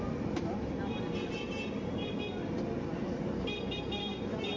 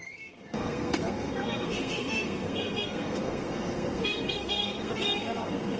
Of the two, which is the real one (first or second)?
first